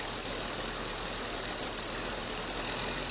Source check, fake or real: real